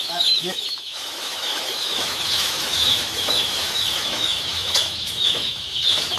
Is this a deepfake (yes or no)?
yes